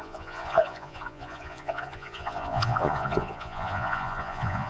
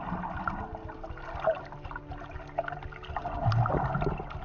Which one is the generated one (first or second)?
first